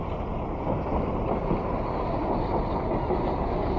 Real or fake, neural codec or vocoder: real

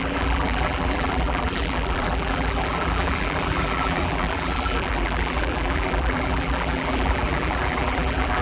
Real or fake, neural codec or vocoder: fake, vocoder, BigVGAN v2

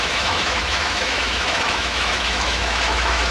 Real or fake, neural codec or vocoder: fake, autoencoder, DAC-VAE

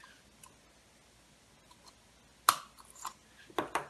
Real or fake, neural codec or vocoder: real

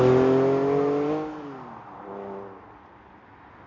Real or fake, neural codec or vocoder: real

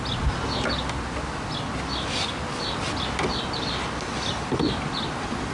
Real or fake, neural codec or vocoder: real